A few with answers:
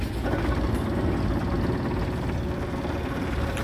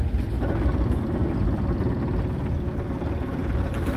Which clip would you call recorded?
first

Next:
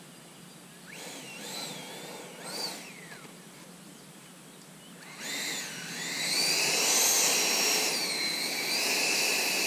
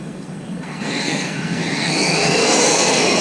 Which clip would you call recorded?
first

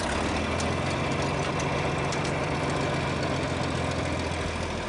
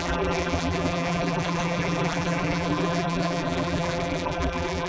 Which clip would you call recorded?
first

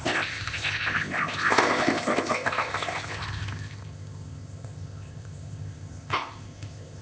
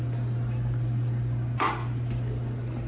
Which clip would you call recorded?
second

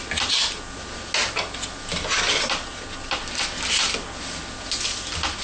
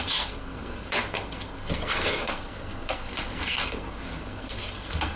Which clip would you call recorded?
first